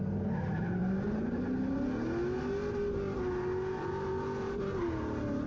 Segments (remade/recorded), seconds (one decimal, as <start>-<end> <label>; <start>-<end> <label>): 0.0-5.5 recorded